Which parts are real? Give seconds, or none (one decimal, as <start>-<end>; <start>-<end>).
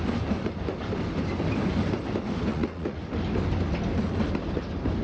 0.0-2.5; 3.0-5.0